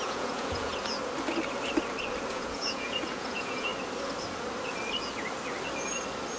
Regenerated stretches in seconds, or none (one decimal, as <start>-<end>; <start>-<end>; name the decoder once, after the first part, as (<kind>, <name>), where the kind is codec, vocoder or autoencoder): 0.0-0.7 (vocoder, Vocos); 2.3-3.7